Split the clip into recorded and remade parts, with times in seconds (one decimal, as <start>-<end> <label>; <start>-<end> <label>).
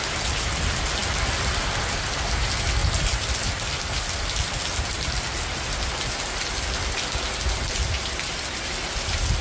0.0-9.4 recorded